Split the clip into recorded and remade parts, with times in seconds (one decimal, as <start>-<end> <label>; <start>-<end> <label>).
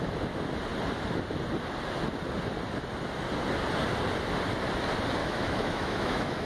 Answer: 0.0-5.2 recorded; 5.2-6.5 remade